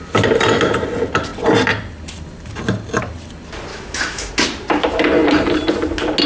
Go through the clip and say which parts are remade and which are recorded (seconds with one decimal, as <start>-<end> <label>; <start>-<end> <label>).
0.0-3.7 recorded; 3.7-4.3 remade; 4.3-6.3 recorded